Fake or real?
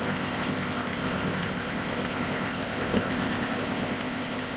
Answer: fake